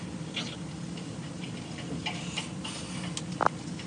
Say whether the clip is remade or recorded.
recorded